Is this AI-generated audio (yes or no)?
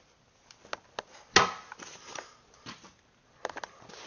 no